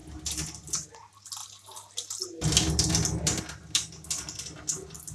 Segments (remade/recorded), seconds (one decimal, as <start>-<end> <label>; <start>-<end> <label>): 0.0-5.1 recorded